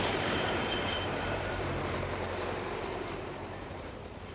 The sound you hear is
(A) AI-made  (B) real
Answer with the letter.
A